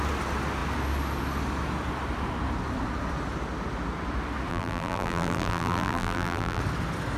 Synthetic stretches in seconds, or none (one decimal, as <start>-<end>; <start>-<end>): 4.5-6.6